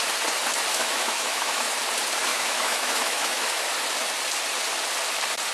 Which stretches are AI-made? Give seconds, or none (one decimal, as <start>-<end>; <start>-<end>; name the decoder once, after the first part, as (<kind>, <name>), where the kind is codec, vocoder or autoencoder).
0.7-1.7 (autoencoder, DAC-VAE); 2.3-3.6